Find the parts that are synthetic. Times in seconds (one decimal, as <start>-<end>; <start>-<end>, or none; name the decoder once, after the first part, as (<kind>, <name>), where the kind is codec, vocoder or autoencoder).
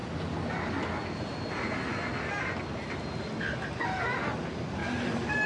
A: none